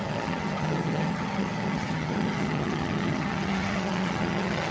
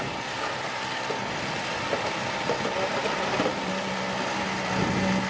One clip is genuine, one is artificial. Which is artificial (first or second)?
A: first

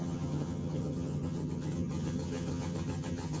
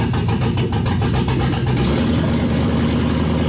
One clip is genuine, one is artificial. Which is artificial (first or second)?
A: first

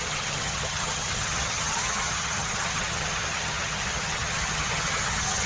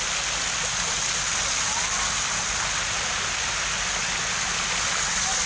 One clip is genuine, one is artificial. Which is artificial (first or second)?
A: first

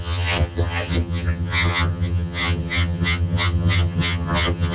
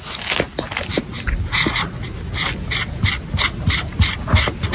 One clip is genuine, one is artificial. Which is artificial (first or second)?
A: first